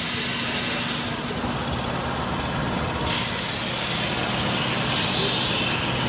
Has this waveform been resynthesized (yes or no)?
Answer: no